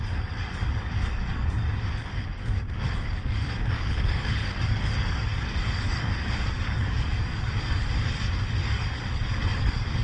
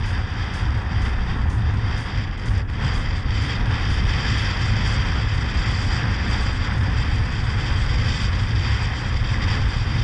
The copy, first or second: first